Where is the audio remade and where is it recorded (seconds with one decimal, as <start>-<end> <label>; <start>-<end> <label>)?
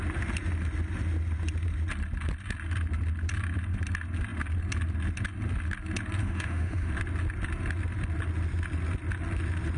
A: 0.0-6.2 recorded; 6.2-6.9 remade; 6.9-9.8 recorded